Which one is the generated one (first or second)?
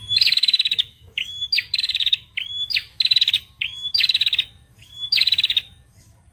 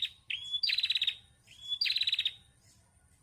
first